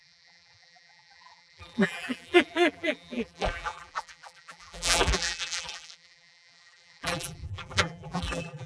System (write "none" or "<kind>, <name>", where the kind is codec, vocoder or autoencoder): vocoder, BigVGAN v2